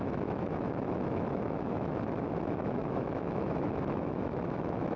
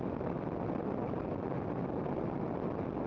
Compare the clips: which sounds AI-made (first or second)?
first